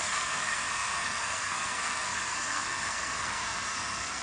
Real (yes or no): no